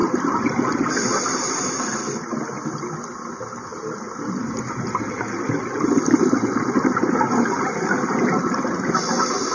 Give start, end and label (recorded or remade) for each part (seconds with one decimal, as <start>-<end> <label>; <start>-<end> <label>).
0.0-9.5 recorded